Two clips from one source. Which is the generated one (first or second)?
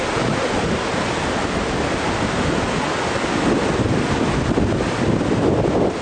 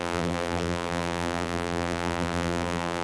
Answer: second